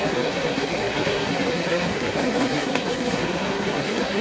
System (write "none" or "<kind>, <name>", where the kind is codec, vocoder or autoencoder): codec, SNAC